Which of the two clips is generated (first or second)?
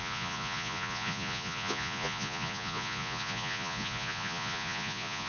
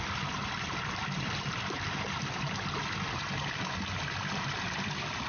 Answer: first